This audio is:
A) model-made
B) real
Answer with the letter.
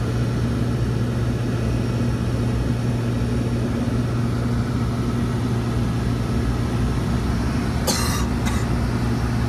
B